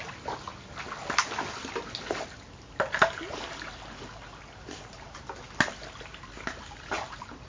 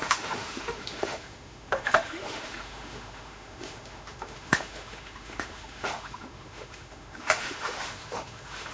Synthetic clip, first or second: second